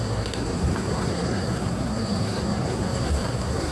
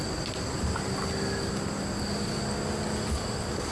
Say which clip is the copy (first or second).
first